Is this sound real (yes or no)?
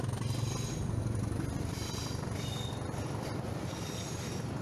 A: yes